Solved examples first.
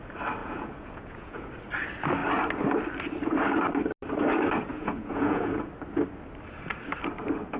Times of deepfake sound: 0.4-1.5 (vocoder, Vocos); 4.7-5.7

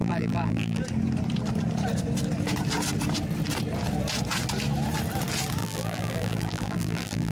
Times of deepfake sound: 0.0-0.8 (vocoder, BigVGAN v2); 5.6-7.3

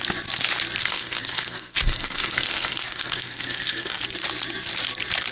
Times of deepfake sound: 0.8-4.0 (codec, SNAC)

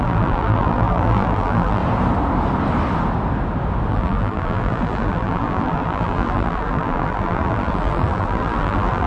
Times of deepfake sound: 0.0-1.8 (vocoder, BigVGAN v2); 3.9-9.1